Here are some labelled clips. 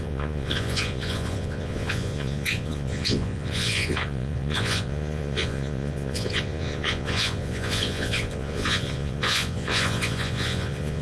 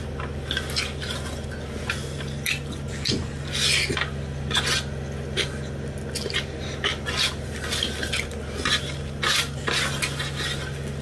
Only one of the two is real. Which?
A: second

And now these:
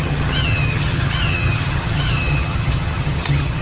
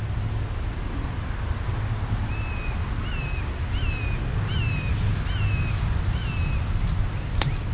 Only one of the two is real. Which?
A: second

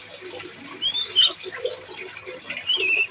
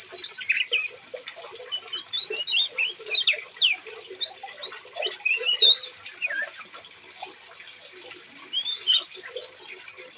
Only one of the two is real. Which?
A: first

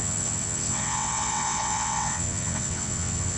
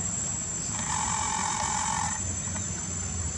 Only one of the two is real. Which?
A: second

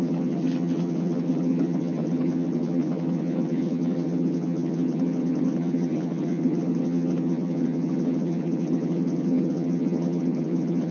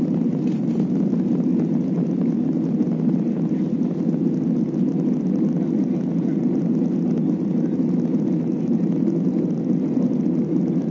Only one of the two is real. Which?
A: second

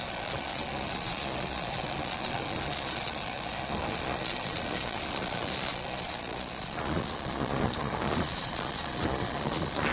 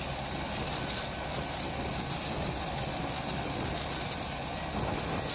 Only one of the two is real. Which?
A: second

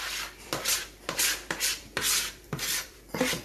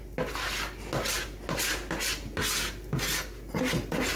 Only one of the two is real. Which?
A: second